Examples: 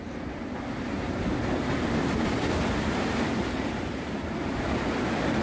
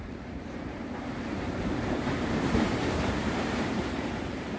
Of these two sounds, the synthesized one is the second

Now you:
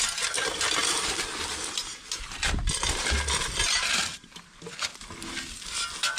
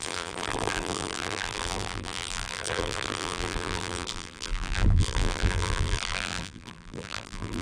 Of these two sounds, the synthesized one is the second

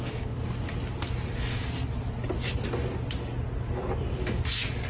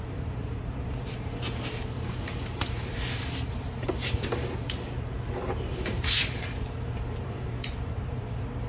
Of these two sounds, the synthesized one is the second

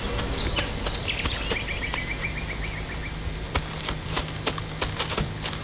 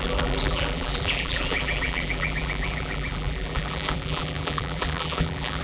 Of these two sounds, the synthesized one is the second